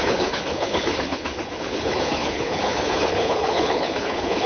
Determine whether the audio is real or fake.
fake